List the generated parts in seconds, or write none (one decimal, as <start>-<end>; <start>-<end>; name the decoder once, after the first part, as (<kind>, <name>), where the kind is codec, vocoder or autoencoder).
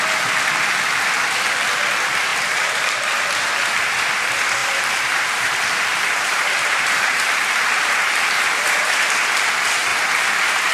2.3-3.5 (vocoder, BigVGAN v2); 4.6-9.1; 9.9-10.7